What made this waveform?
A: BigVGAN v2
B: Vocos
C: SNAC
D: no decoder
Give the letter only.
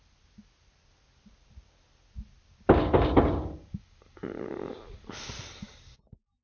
D